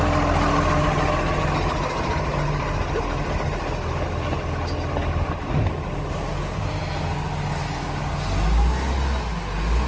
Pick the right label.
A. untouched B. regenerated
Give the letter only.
A